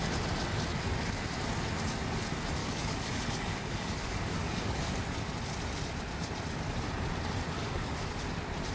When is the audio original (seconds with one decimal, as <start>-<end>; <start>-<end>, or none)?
0.0-2.6; 5.0-7.6; 8.2-8.7